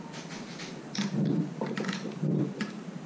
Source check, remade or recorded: recorded